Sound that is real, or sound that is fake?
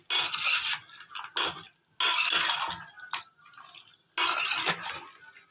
real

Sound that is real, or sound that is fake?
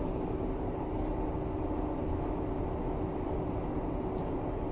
real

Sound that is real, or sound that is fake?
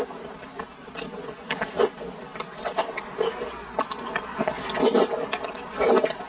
real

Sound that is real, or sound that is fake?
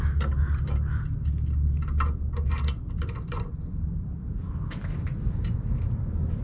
real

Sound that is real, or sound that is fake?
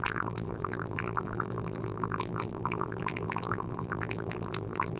fake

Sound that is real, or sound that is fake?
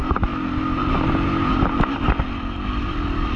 real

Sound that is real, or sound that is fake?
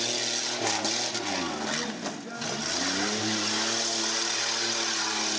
real